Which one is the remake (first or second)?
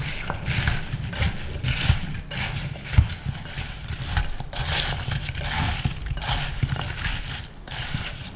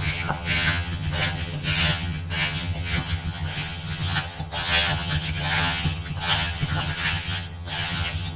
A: second